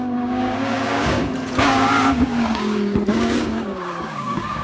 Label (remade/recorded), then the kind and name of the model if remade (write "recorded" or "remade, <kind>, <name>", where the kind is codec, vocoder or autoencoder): remade, codec, DAC